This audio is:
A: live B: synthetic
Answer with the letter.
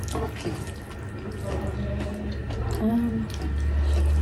A